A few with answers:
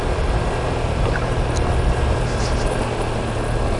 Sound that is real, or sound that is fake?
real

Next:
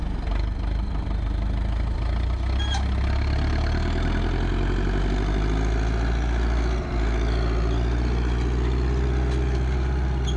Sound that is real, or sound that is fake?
real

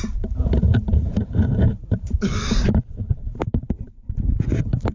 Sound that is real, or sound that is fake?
fake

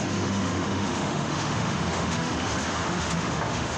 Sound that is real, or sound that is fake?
fake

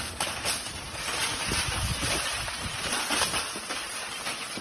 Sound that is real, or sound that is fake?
fake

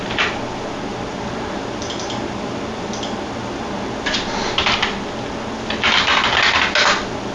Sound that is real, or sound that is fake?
real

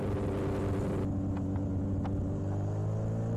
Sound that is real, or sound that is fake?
real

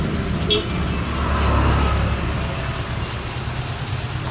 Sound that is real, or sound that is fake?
real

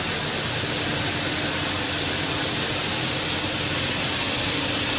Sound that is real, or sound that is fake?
real